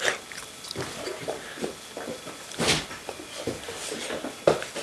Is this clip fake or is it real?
real